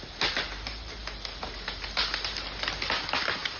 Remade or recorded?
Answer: recorded